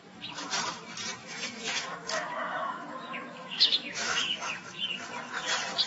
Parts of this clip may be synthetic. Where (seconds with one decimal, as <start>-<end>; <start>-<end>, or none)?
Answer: 1.2-4.7